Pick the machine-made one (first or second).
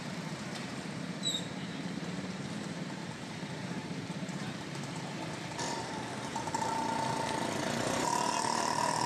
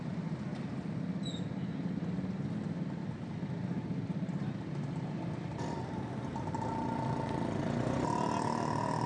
first